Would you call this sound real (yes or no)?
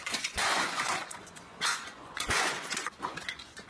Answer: no